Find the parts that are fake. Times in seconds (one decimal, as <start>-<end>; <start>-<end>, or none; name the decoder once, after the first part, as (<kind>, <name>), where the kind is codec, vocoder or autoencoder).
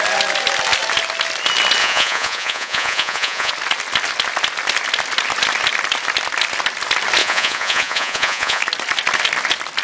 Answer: 1.8-3.5 (vocoder, Vocos); 7.2-8.6